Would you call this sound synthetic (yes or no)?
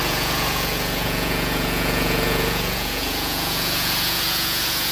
yes